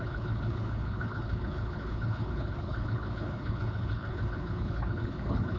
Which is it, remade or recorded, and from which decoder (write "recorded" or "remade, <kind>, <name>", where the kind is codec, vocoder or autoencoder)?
remade, codec, HILCodec